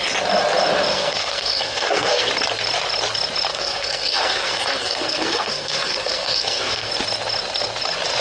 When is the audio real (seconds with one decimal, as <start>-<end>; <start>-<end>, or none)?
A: 0.0-0.9; 2.3-3.5; 6.9-8.2